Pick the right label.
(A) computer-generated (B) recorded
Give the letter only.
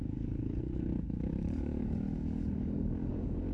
A